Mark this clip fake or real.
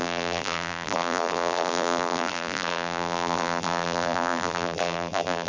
fake